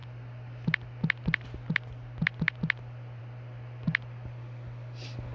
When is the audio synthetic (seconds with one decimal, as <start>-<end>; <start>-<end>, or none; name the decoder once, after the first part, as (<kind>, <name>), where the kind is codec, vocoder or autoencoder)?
none